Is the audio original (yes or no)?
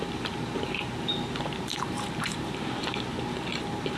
no